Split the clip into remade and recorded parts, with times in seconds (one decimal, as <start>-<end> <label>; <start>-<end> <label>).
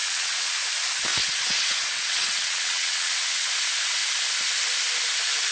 0.0-0.5 remade; 0.5-1.1 recorded; 1.1-3.5 remade; 3.5-5.5 recorded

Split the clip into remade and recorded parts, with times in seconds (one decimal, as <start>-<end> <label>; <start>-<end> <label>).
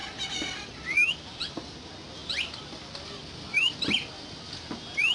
0.0-1.7 remade; 1.7-2.2 recorded; 2.2-4.3 remade; 4.3-5.1 recorded